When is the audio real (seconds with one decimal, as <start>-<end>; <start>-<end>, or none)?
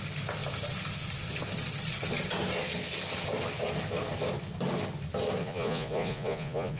0.0-5.4